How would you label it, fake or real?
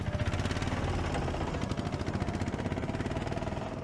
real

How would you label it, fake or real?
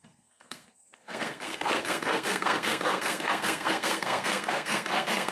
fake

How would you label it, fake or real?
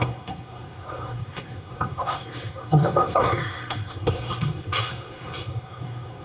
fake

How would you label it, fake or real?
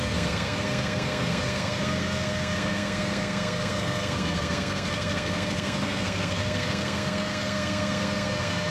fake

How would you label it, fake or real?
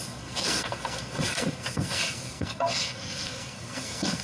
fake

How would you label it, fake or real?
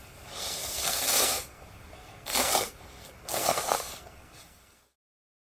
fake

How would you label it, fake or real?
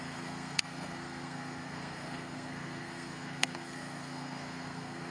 fake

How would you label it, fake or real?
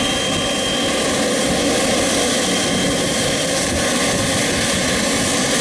real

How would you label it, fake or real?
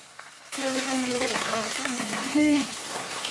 fake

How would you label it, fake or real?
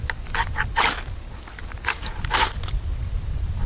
real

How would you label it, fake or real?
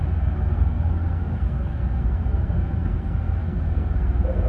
fake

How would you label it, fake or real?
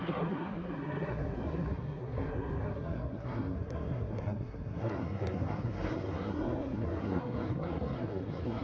fake